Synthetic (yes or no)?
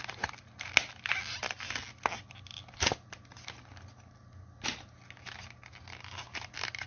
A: no